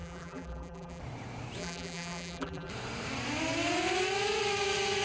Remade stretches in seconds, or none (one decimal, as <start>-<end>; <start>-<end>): 0.0-1.0; 1.6-2.7